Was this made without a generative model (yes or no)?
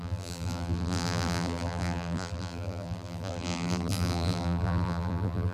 no